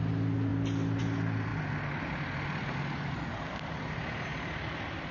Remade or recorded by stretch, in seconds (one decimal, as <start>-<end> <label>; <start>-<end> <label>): 0.0-5.1 recorded